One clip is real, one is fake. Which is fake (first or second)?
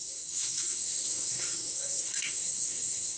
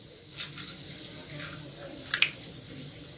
first